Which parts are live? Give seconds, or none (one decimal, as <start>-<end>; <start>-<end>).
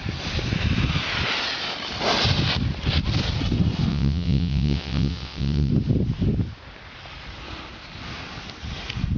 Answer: 0.0-3.9; 5.7-9.2